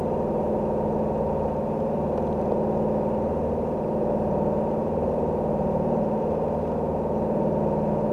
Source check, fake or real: real